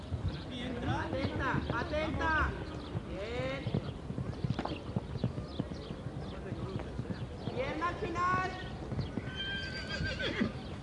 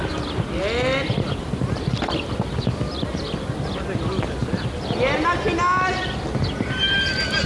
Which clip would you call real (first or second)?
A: first